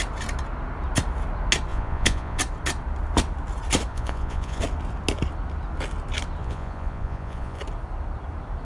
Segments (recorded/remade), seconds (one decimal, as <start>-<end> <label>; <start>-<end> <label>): 0.0-1.7 recorded; 1.7-2.4 remade; 2.4-3.9 recorded; 3.9-4.6 remade; 4.6-6.4 recorded; 6.4-7.6 remade; 7.6-8.6 recorded

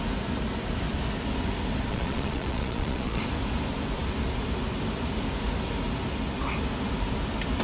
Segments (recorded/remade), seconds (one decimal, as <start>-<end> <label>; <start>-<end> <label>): 0.0-1.9 recorded; 1.9-3.2 remade; 3.2-7.6 recorded

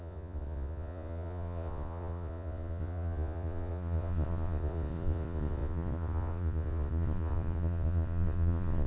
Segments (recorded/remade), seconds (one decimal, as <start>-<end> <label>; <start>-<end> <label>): 0.0-8.9 remade